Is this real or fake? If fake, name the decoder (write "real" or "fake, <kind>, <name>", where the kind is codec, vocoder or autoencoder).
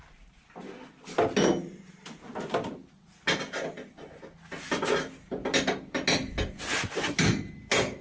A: real